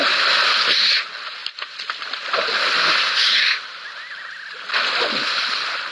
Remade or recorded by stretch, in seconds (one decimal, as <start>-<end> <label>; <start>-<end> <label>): 0.0-5.9 recorded